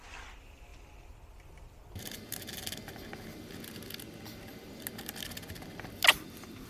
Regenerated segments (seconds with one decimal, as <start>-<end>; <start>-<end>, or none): none